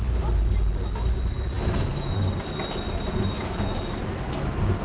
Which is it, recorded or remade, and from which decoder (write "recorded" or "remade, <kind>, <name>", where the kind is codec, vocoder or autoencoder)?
recorded